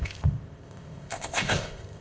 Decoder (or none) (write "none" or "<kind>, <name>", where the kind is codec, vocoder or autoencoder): codec, ZipCodec